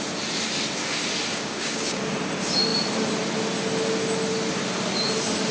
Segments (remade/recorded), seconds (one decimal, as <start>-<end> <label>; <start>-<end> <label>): 0.0-1.3 recorded; 1.3-2.0 remade; 2.0-5.5 recorded